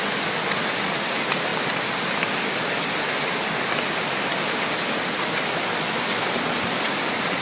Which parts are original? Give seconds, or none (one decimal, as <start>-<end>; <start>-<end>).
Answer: 0.0-7.4